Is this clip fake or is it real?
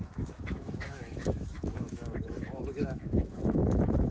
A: fake